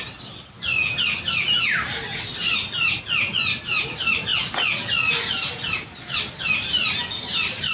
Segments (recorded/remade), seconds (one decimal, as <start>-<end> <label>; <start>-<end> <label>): 0.0-7.7 recorded